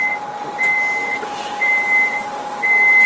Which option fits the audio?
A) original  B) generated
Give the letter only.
B